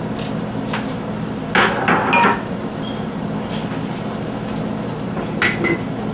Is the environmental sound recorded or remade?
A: recorded